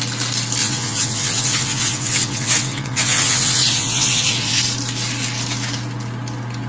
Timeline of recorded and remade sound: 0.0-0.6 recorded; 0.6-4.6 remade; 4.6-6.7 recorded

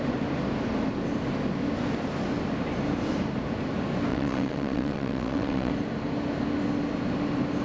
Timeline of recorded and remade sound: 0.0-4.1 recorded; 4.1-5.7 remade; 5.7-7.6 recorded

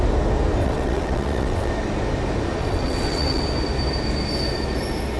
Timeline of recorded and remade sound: 0.0-0.6 recorded; 0.6-1.7 remade; 1.7-2.6 recorded; 2.6-3.4 remade; 3.4-5.2 recorded

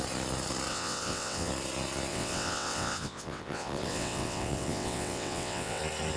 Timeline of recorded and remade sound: 0.0-0.7 recorded; 0.7-1.5 remade; 1.5-2.1 recorded; 2.1-5.8 remade; 5.8-6.2 recorded

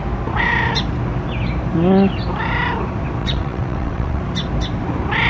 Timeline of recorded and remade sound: 0.0-3.2 recorded; 3.2-4.2 remade; 4.2-5.3 recorded